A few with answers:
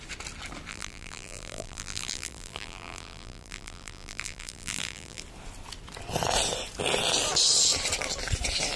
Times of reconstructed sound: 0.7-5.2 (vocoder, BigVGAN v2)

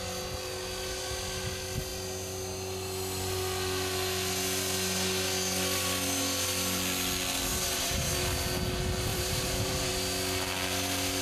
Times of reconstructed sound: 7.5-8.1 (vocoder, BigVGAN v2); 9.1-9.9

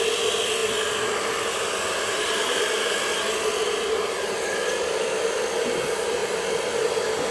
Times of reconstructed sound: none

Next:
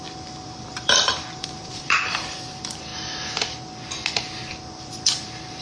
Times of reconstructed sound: 0.0-2.9 (vocoder, BigVGAN v2); 4.7-5.6